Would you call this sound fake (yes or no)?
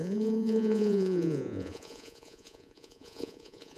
yes